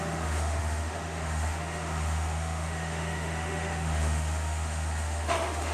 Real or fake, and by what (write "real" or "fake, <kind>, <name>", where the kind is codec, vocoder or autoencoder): fake, autoencoder, DAC-VAE